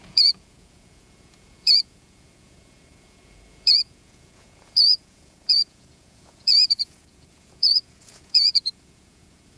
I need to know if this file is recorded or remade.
remade